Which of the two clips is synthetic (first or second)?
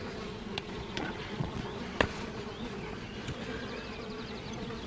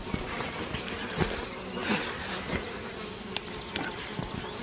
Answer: first